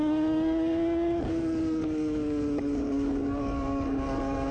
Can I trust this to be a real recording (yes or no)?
no